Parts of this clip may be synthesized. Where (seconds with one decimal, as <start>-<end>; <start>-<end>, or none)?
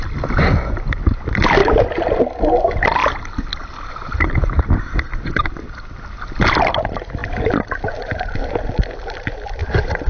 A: none